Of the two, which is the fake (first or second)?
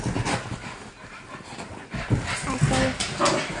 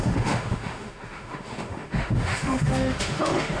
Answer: second